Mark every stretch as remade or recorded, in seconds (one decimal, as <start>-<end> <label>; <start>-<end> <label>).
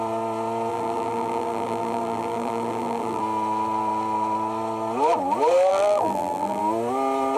0.0-0.7 recorded; 0.7-3.2 remade; 3.2-5.7 recorded; 5.7-6.6 remade; 6.6-7.4 recorded